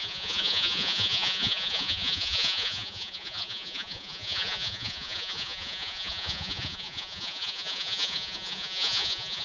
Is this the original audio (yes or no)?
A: no